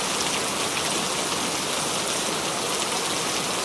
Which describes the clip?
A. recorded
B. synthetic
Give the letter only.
A